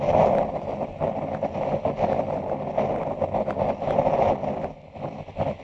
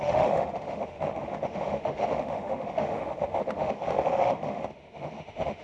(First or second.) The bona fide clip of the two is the first